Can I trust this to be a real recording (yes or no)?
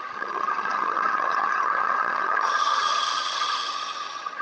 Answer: no